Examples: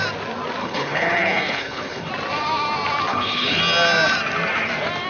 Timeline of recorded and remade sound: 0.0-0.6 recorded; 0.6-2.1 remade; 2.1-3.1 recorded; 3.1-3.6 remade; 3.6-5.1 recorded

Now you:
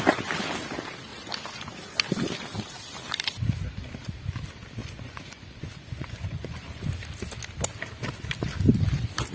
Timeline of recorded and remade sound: 0.0-4.8 recorded; 4.8-6.8 remade; 6.8-9.3 recorded

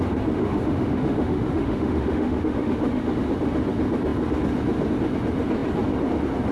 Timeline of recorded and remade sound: 0.0-0.4 recorded; 0.4-3.1 remade; 3.1-6.5 recorded

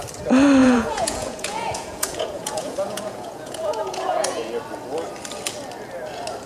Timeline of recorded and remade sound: 0.0-0.6 recorded; 0.6-4.5 remade; 4.5-6.5 recorded

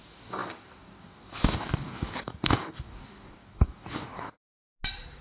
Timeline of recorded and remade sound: 0.0-4.6 remade; 4.6-5.2 recorded

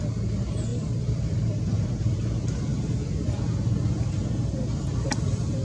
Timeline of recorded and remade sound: 0.0-0.7 recorded; 0.7-1.9 remade; 1.9-5.6 recorded

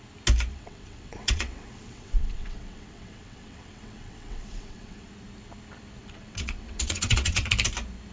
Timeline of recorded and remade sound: 0.0-0.5 recorded; 0.5-5.1 remade; 5.1-6.0 recorded; 6.0-7.5 remade; 7.5-8.1 recorded

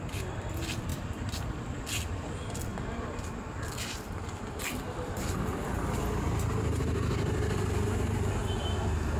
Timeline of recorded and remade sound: 0.0-0.9 recorded; 0.9-1.8 remade; 1.8-2.7 recorded; 2.7-5.8 remade; 5.8-9.2 recorded